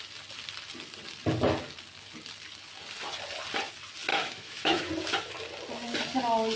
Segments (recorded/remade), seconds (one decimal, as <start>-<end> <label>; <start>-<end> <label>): 0.0-4.1 recorded; 4.1-4.9 remade; 4.9-6.6 recorded